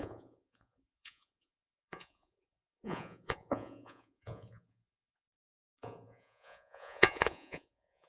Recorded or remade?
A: remade